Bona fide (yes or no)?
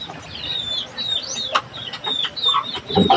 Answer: yes